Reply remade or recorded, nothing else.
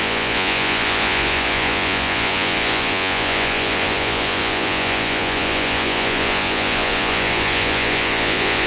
remade